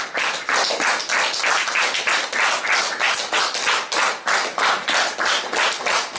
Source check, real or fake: real